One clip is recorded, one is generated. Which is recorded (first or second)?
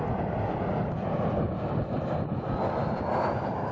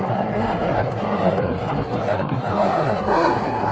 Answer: first